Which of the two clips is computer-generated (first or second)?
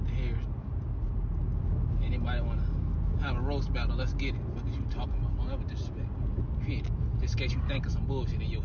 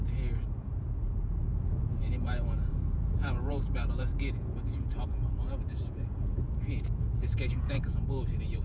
second